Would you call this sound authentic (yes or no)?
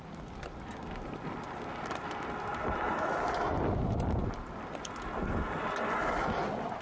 yes